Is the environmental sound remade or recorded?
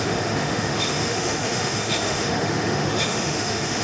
remade